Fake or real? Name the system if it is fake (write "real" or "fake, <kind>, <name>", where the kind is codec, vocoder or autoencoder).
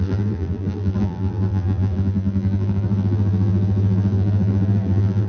fake, vocoder, BigVGAN v2